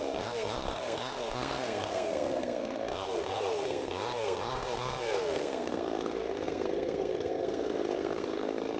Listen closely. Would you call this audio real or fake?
fake